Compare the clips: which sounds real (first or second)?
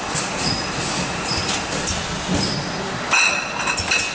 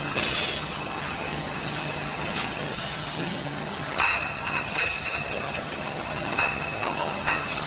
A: first